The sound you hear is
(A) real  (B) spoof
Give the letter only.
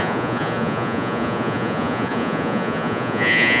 B